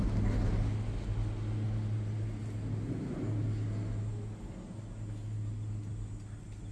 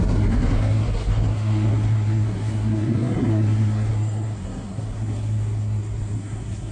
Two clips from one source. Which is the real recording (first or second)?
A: first